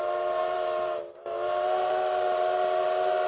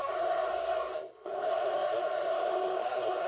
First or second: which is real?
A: first